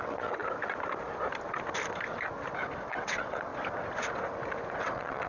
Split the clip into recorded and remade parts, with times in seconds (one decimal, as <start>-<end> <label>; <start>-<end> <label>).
0.0-0.4 remade; 0.4-2.9 recorded; 2.9-3.5 remade; 3.5-4.8 recorded; 4.8-5.3 remade